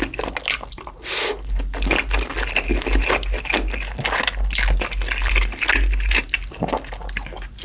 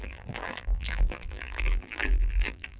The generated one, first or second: second